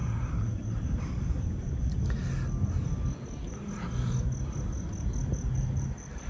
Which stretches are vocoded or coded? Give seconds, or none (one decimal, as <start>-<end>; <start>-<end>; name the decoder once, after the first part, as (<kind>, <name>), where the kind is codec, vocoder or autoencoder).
0.0-2.2 (vocoder, BigVGAN v2); 5.3-6.3